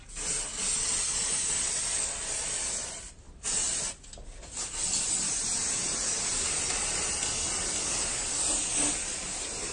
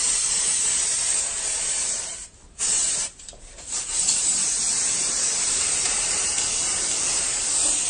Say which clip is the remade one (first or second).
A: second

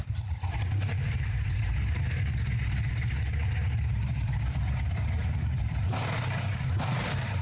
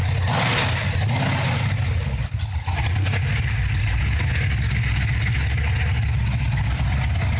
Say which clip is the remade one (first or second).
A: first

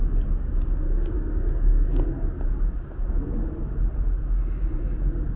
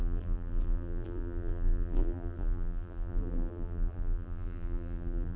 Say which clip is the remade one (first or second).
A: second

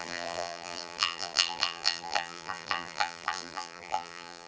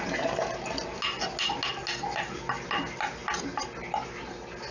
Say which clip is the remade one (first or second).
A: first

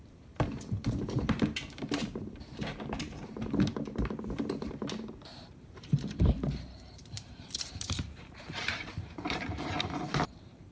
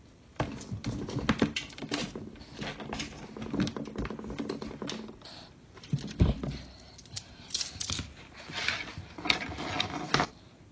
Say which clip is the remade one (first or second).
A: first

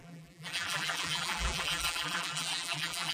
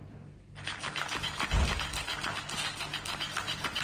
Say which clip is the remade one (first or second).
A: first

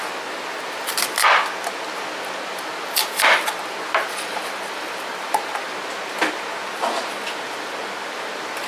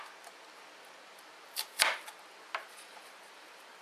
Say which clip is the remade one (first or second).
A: second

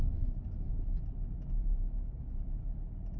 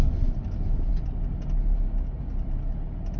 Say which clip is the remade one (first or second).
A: first